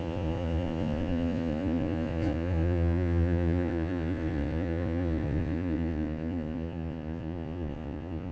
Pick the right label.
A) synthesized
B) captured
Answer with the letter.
A